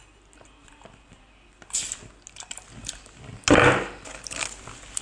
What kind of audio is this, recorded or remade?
recorded